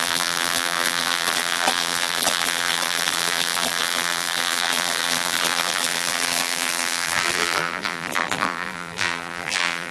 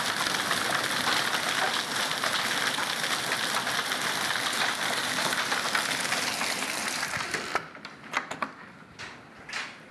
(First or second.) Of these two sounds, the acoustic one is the second